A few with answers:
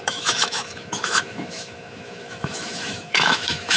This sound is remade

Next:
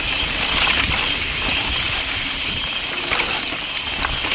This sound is recorded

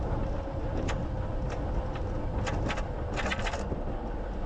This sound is recorded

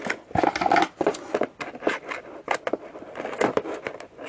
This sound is recorded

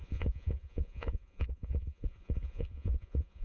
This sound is remade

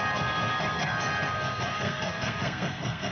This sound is remade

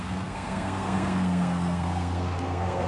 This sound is remade